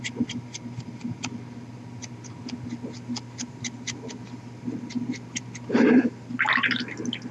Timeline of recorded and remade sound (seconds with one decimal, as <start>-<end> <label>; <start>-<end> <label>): 0.0-7.3 recorded